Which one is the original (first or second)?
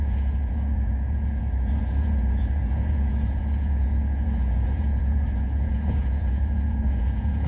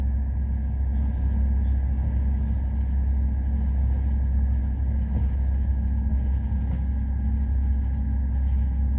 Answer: second